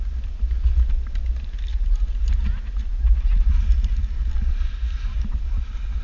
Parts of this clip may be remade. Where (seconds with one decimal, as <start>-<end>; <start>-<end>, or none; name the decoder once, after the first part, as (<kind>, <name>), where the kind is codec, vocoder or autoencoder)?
none